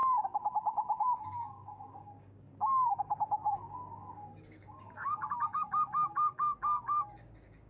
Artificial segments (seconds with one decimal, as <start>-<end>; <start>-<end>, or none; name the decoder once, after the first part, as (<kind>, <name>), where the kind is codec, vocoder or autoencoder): 1.0-7.7 (codec, DAC)